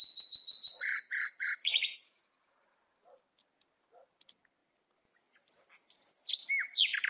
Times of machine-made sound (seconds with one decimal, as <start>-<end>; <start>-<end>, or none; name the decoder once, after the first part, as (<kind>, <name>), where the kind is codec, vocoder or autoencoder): 0.7-2.8 (vocoder, Vocos)

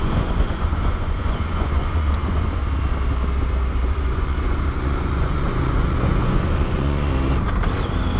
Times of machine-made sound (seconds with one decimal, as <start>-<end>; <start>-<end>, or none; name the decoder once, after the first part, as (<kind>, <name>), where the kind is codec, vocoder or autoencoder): 0.0-2.6 (vocoder, Vocos); 3.9-7.1

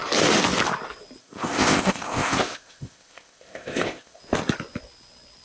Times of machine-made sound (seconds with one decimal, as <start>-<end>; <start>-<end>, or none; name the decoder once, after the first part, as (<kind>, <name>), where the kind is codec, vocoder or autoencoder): 1.2-4.2 (codec, ZipCodec)

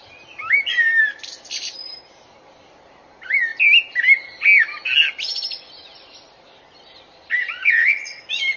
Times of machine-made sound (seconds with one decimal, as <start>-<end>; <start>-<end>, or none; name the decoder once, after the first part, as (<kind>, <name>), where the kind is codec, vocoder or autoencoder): 7.4-8.2 (vocoder, WaveNeXt)

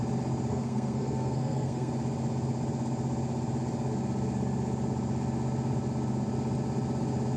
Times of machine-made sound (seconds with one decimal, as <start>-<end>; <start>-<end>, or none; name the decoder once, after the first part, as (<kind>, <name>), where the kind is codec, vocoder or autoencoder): 0.5-1.9 (codec, SNAC)

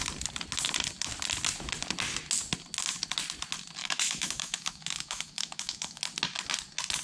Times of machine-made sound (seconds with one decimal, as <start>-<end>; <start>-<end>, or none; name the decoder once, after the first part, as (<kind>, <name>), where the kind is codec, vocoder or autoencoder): 3.8-6.0 (autoencoder, DAC-VAE)